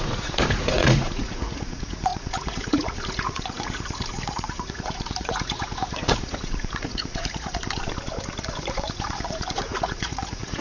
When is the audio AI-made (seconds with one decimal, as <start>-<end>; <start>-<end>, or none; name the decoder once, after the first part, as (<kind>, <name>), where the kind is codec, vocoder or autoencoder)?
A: 0.0-7.6 (vocoder, Vocos); 8.4-10.6